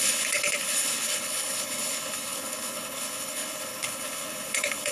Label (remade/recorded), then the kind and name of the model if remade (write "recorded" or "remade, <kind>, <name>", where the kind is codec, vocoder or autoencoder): remade, codec, HILCodec